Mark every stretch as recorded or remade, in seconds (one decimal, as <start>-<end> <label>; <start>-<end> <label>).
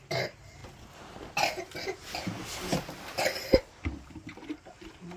0.0-5.2 recorded